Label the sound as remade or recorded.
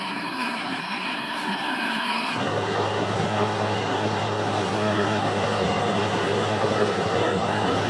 remade